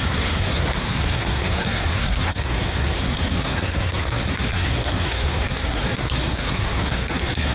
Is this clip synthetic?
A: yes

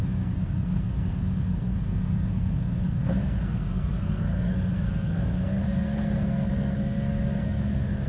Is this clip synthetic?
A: yes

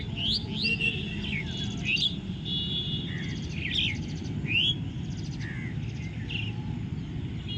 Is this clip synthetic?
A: no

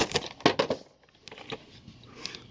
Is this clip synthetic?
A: no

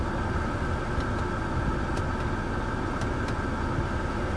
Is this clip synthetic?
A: no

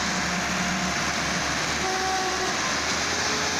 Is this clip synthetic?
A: no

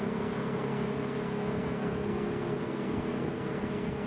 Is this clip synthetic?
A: yes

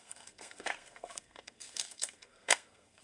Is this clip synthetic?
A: yes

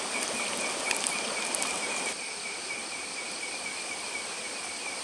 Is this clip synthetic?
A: no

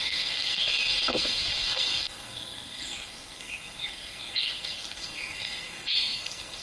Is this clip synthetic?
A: yes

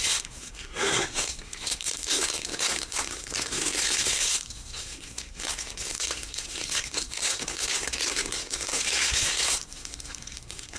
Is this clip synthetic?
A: yes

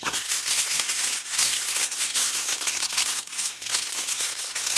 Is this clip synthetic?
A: yes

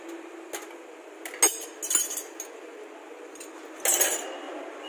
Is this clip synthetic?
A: no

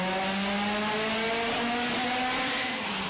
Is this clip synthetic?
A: no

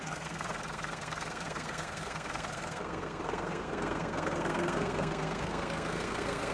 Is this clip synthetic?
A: yes